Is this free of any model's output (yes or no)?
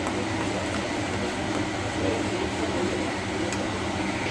yes